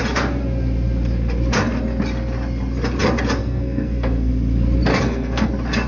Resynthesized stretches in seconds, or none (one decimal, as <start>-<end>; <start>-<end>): 3.4-4.3; 4.9-5.5